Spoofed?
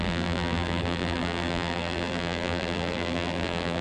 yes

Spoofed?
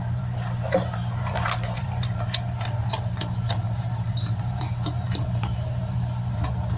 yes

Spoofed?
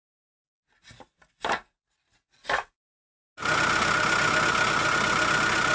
no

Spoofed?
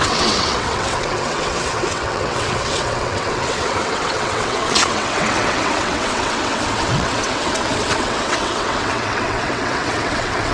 yes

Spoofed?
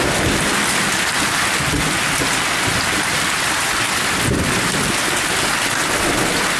no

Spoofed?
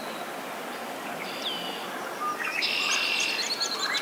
no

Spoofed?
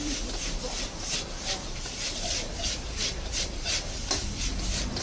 no